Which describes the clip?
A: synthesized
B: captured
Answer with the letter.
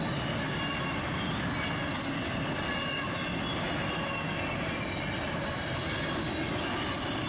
B